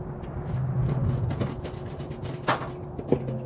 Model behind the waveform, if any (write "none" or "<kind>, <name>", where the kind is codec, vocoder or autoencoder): none